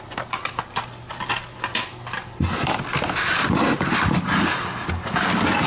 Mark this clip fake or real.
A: real